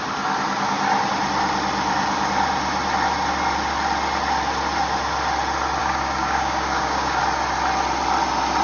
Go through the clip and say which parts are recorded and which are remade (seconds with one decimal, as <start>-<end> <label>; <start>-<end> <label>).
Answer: 0.0-5.8 recorded; 5.8-7.2 remade; 7.2-8.6 recorded